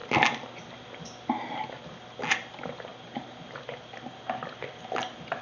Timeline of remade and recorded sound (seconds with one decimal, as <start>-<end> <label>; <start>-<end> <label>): 0.0-5.4 recorded